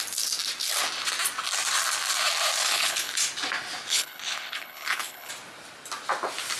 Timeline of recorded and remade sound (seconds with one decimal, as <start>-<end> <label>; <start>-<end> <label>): 0.0-2.6 recorded; 2.6-3.1 remade; 3.1-3.9 recorded; 3.9-5.3 remade; 5.3-6.6 recorded

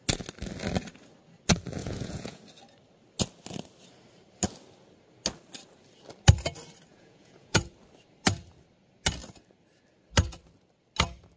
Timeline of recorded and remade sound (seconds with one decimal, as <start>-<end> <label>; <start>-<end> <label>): 0.0-1.8 recorded; 1.8-2.4 remade; 2.4-6.9 recorded; 6.9-7.6 remade; 7.6-11.4 recorded